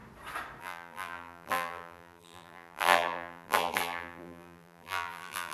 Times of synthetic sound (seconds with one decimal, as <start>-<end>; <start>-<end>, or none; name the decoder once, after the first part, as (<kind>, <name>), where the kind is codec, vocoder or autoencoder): 0.6-5.5 (vocoder, BigVGAN v2)